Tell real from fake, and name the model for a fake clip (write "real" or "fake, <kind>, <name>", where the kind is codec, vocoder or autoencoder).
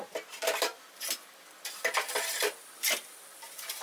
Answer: fake, vocoder, BigVGAN v2